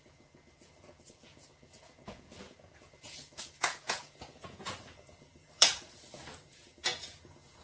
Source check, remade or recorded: remade